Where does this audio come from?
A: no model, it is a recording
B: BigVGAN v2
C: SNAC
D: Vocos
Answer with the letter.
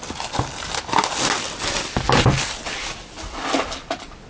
A